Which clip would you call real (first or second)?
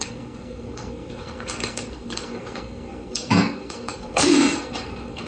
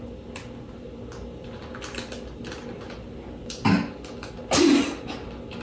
second